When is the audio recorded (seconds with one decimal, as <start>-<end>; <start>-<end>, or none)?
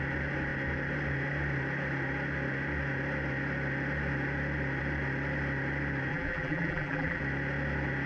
0.0-6.1; 7.2-8.1